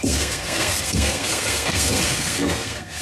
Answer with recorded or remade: remade